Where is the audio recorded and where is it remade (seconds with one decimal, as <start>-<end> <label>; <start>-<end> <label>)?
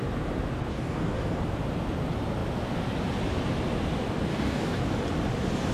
0.0-0.7 recorded; 0.7-1.4 remade; 1.4-4.3 recorded; 4.3-4.8 remade; 4.8-5.7 recorded